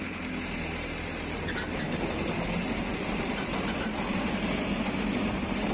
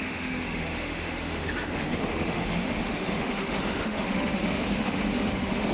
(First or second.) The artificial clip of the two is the second